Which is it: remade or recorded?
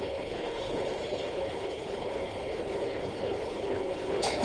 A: remade